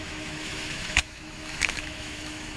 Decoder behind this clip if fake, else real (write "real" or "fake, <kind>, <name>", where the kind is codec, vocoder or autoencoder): fake, autoencoder, DAC-VAE